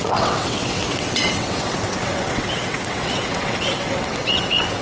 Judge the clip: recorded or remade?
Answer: remade